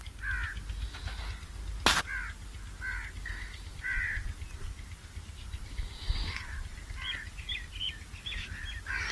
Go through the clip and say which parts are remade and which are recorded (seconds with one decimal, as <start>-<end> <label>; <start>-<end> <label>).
0.0-9.1 recorded